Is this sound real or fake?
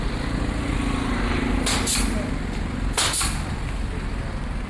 real